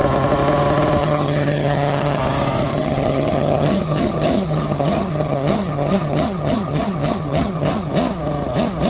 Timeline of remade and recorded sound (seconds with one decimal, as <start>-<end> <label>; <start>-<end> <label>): 0.0-1.0 recorded; 1.0-2.2 remade; 2.2-2.7 recorded; 2.7-7.9 remade; 7.9-8.9 recorded